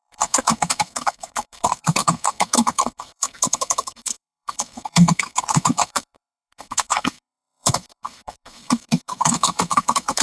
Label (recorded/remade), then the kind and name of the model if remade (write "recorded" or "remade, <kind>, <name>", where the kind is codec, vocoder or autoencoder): remade, codec, SNAC